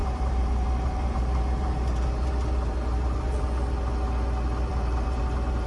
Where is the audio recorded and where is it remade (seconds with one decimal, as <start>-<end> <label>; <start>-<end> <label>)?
0.0-3.4 remade; 3.4-4.7 recorded; 4.7-5.2 remade; 5.2-5.7 recorded